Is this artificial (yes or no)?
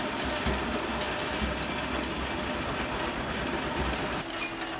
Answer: no